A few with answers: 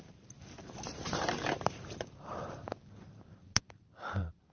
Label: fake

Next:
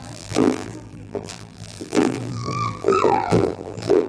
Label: fake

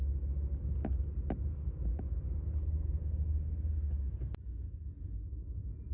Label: real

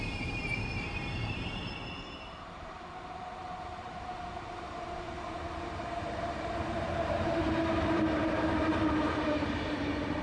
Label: fake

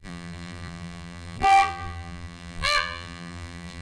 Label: fake